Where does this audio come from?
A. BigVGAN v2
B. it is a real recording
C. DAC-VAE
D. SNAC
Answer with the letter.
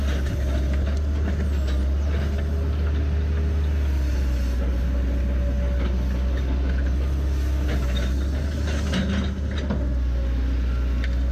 B